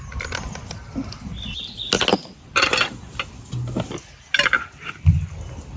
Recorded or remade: recorded